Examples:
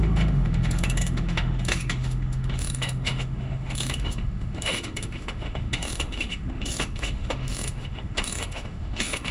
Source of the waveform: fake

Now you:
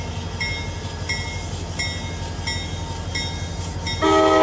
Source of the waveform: real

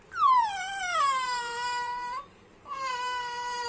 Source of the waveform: fake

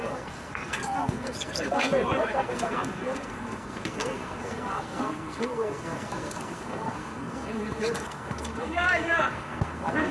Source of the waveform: fake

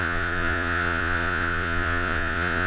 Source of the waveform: fake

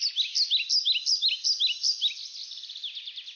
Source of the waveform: real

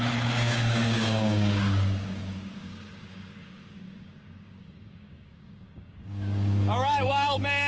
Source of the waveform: fake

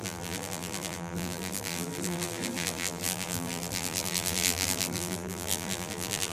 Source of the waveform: fake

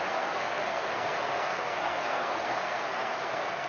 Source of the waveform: fake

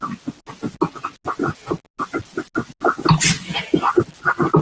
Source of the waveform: real